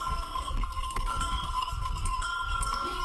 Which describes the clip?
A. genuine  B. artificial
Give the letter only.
B